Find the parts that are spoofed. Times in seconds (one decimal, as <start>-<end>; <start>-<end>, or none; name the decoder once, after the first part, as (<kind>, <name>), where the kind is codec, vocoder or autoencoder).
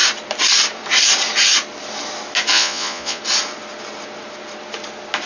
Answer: 2.5-3.2 (vocoder, Vocos)